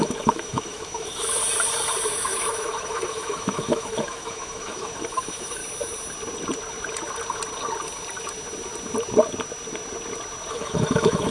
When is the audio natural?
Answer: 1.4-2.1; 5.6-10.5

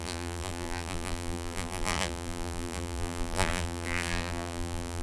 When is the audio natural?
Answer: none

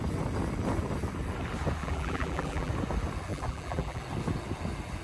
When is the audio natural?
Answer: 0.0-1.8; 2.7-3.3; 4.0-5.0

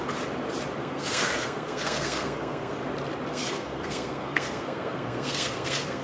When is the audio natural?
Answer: 0.0-0.8; 2.8-3.3

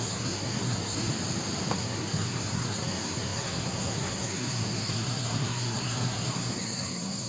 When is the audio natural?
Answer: 1.1-1.7

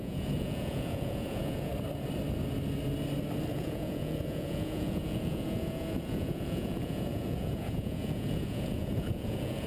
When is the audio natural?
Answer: 1.7-3.5